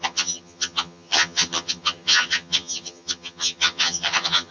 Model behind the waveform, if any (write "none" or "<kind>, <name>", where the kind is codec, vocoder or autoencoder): vocoder, HiFi-GAN